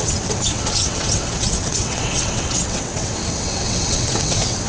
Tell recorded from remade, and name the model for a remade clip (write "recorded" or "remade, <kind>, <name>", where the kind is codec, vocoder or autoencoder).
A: remade, vocoder, WaveNeXt